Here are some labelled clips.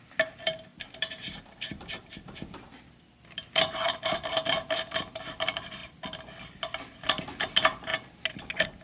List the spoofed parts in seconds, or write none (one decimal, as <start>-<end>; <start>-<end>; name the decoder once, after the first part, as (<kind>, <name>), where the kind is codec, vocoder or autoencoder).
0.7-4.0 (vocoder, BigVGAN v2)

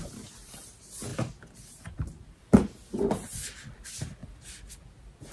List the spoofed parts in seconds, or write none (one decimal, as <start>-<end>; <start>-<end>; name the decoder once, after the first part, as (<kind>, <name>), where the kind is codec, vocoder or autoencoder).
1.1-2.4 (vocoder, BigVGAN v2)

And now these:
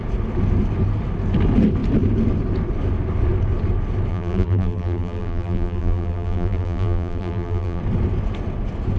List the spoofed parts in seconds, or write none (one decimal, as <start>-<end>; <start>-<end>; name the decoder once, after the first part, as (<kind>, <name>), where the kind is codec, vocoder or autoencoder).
4.1-7.8 (vocoder, BigVGAN v2)